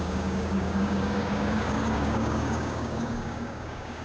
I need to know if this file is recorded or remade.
remade